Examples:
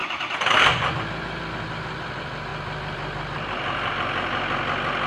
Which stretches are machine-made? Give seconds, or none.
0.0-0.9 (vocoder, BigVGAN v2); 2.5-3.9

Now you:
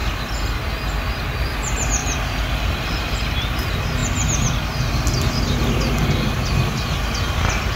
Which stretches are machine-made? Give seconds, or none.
none

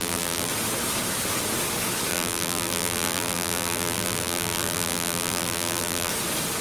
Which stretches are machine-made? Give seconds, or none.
0.0-0.5 (vocoder, BigVGAN v2); 2.1-6.1

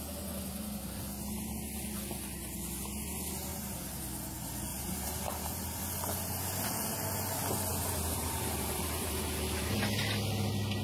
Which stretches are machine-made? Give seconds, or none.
3.5-4.0 (vocoder, BigVGAN v2); 4.7-5.8; 7.7-9.2

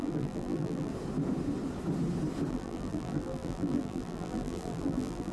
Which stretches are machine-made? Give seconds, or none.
0.0-0.9 (vocoder, BigVGAN v2); 2.5-5.3